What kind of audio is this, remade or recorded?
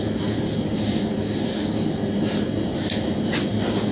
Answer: recorded